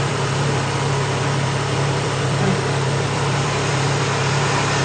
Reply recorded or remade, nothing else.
remade